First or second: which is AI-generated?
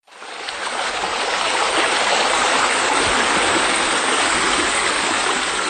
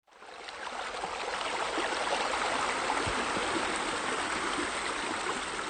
first